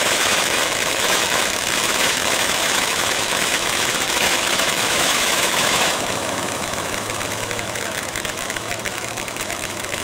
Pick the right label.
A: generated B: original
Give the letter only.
A